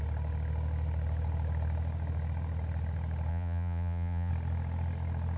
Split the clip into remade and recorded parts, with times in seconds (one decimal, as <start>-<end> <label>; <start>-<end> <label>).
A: 0.0-3.3 recorded; 3.3-4.3 remade; 4.3-5.4 recorded